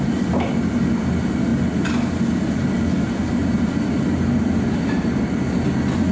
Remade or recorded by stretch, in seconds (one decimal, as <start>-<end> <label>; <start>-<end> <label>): 0.0-6.1 recorded